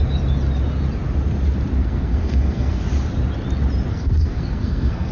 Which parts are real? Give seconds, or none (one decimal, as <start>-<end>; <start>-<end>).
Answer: 0.0-1.8; 2.8-3.9